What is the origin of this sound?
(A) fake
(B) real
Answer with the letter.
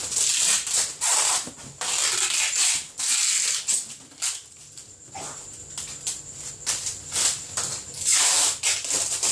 B